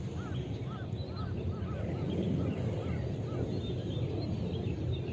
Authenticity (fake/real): real